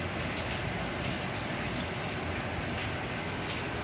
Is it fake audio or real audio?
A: real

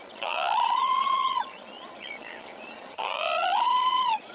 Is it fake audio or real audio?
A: fake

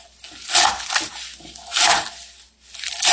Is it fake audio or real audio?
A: real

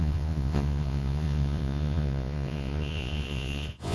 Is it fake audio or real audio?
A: fake